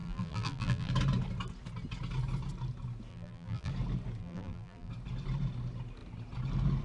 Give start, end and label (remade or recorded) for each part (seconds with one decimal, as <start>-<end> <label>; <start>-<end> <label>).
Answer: 0.0-0.9 remade; 0.9-3.1 recorded; 3.1-3.7 remade; 3.7-4.2 recorded; 4.2-4.9 remade; 4.9-6.8 recorded